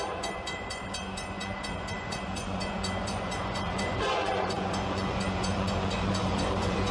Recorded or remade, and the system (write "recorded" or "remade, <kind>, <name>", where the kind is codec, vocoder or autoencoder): remade, vocoder, Vocos